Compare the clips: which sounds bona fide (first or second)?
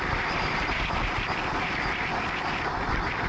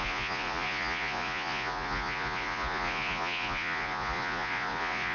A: first